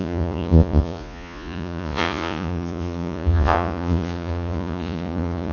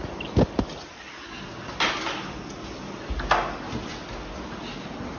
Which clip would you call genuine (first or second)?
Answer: second